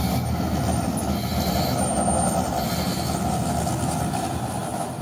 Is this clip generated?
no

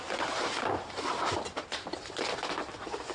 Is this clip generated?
no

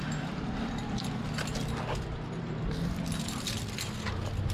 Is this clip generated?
no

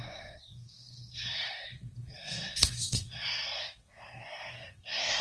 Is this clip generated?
yes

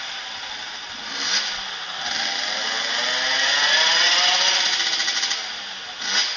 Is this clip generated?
no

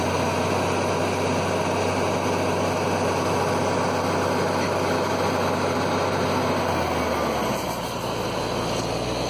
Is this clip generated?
no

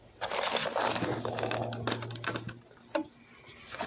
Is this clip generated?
no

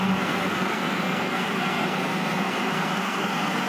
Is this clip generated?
yes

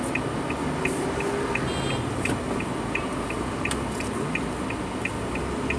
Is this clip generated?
no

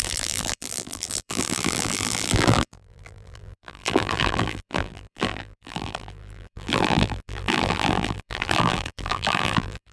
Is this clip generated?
yes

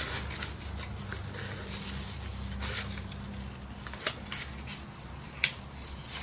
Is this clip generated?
no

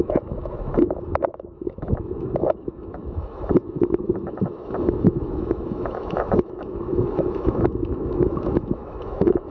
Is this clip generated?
yes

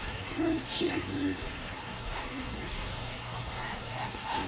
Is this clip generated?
yes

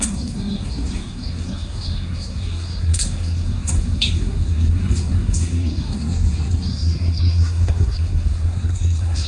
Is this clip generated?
yes